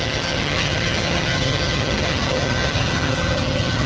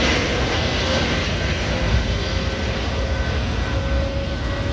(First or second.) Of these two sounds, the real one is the second